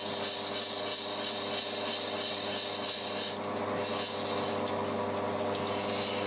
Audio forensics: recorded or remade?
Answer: recorded